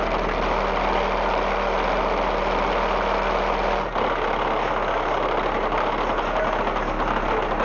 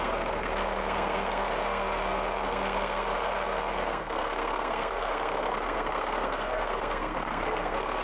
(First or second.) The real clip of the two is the first